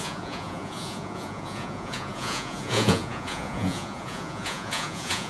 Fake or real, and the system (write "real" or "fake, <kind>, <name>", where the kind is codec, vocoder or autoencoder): fake, vocoder, Vocos